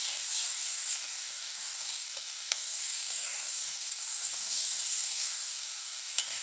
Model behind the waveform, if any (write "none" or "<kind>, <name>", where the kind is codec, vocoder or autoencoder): codec, DAC